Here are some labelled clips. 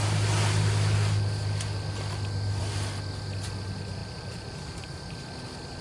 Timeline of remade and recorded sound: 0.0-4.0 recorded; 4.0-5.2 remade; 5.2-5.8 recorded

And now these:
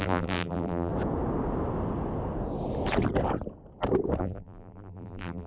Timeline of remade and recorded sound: 0.0-0.9 remade; 0.9-4.2 recorded; 4.2-5.5 remade

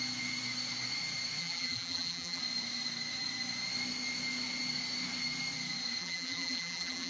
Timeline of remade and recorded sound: 0.0-1.4 recorded; 1.4-2.4 remade; 2.4-6.0 recorded; 6.0-7.1 remade

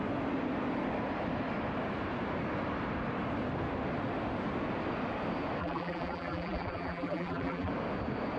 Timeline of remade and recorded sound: 0.0-5.6 recorded; 5.6-7.7 remade; 7.7-8.4 recorded

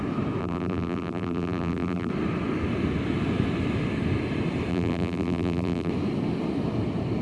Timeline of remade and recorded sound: 0.0-0.4 recorded; 0.4-2.1 remade; 2.1-4.7 recorded; 4.7-5.9 remade; 5.9-7.2 recorded

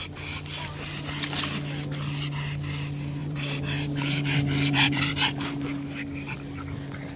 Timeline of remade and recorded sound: 0.0-3.2 recorded; 3.2-5.1 remade; 5.1-7.2 recorded

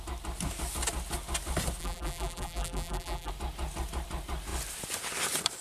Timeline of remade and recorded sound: 0.0-1.8 recorded; 1.8-3.3 remade; 3.3-5.6 recorded

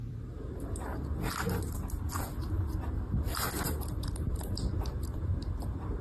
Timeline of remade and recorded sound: 0.0-0.9 remade; 0.9-2.9 recorded; 2.9-6.0 remade